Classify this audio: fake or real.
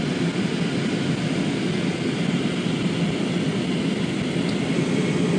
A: real